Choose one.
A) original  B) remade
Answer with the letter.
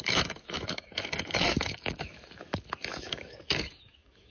B